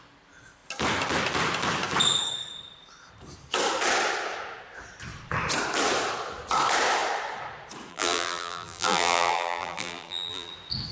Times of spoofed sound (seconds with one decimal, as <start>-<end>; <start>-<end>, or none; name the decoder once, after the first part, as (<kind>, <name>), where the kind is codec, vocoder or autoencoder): 7.9-10.5 (vocoder, BigVGAN v2)